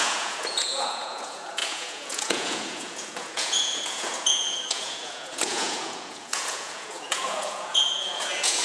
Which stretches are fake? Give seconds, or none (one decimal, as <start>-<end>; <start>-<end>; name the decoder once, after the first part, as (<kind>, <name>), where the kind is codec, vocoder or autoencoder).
0.0-8.6 (vocoder, Vocos)